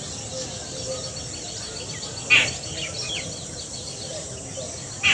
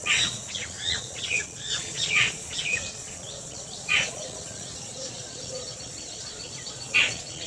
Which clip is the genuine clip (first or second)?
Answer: first